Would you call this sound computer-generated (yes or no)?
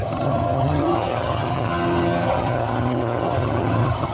yes